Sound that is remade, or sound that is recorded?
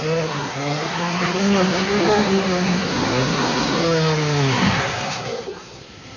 remade